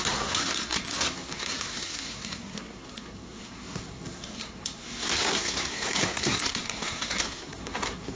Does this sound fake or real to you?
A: fake